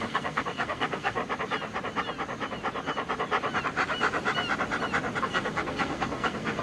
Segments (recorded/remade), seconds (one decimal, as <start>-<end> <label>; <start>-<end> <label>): 0.0-1.2 remade; 1.2-5.2 recorded; 5.2-6.6 remade